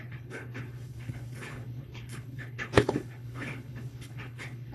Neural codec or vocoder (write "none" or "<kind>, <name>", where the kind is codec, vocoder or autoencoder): codec, HILCodec